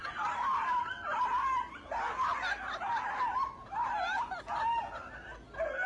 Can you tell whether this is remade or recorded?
recorded